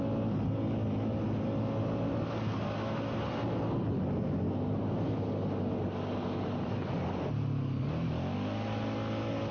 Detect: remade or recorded recorded